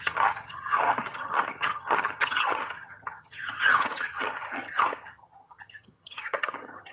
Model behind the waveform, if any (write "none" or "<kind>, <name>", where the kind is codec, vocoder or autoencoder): vocoder, HiFi-GAN